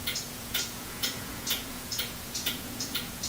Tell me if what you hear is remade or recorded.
remade